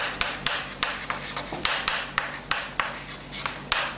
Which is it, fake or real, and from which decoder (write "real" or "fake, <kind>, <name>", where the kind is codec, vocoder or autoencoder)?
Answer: fake, vocoder, BigVGAN v2